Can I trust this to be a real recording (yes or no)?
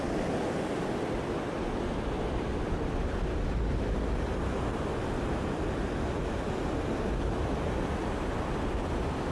yes